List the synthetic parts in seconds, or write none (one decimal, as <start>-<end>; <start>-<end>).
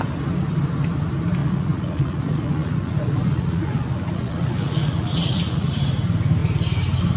1.4-5.7